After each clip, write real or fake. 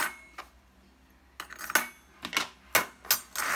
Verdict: real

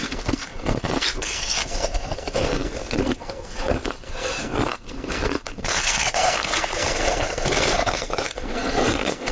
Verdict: fake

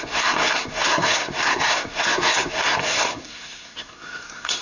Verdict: fake